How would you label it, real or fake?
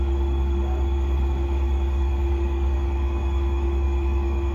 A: fake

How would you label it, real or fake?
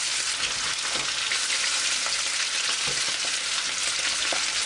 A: real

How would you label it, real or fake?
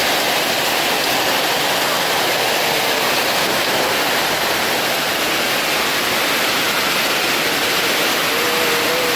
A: real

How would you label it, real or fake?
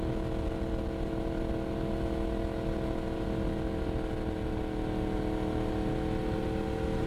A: real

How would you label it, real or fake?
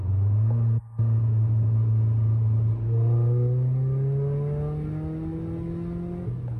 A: real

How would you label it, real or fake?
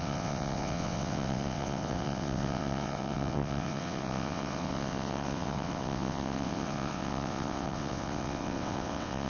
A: fake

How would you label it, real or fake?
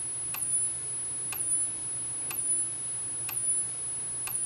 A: real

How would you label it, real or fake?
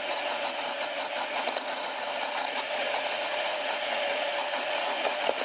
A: fake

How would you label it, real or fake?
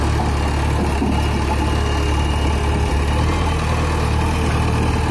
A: real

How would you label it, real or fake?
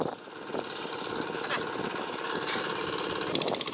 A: real